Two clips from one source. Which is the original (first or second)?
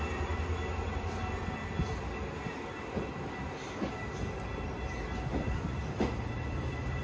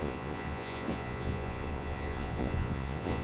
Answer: first